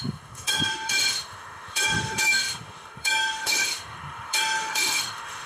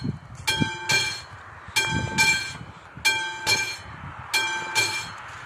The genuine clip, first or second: second